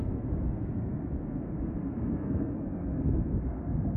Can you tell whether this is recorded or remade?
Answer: remade